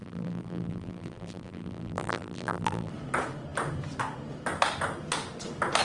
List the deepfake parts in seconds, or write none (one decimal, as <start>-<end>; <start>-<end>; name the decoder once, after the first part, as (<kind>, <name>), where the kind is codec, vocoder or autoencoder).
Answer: 0.0-2.9 (vocoder, BigVGAN v2)